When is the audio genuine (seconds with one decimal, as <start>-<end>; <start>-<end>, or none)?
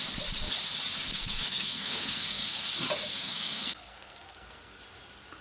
0.0-1.1; 2.6-3.1; 4.8-5.4